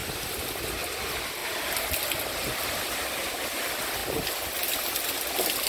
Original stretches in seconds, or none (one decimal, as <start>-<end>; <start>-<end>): 0.0-5.7